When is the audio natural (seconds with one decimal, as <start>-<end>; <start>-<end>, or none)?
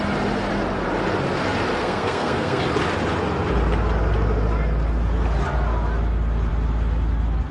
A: 0.0-1.8; 2.6-7.5